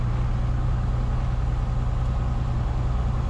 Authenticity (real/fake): real